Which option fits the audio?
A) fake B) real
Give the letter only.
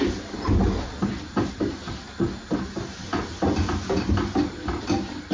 B